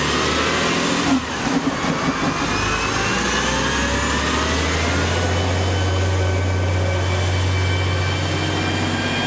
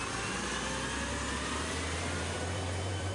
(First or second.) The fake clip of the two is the second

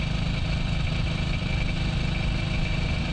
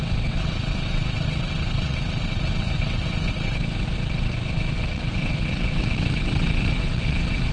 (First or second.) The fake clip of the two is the second